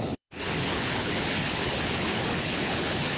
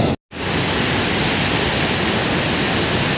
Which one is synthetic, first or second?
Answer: first